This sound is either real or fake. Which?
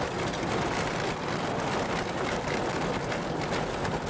real